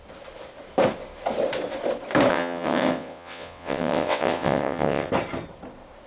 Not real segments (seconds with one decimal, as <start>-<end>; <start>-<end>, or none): 2.3-5.1